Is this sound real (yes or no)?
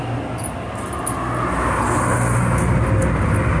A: yes